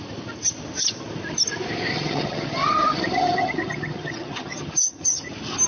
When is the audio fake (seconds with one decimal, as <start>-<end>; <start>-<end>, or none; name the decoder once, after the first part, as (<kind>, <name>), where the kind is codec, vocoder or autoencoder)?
1.9-5.3 (vocoder, HiFi-GAN)